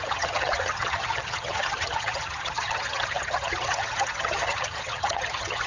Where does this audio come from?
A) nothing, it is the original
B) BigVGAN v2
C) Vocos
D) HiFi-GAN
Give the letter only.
D